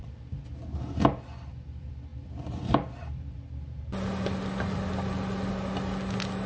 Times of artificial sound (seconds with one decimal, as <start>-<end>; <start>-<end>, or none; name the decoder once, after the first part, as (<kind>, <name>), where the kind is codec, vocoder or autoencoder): none